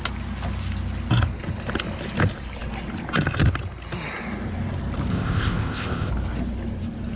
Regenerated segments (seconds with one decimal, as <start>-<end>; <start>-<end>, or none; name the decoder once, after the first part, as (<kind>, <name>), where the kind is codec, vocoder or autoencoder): 5.1-6.1 (codec, ZipCodec)